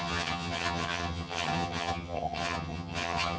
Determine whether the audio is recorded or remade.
remade